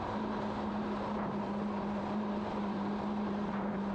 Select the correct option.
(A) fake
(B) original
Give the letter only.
A